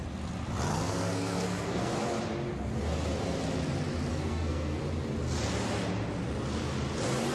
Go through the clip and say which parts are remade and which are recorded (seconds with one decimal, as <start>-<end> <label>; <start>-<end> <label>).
0.0-0.7 recorded; 0.7-1.9 remade; 1.9-4.1 recorded; 4.1-4.8 remade; 4.8-7.3 recorded